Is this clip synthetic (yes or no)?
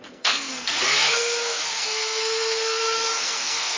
yes